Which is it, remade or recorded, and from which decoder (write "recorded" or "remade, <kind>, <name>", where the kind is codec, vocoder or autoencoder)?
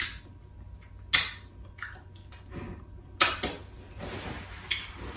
recorded